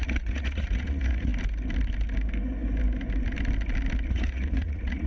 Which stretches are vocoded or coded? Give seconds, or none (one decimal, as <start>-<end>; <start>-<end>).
0.0-1.3; 4.1-5.1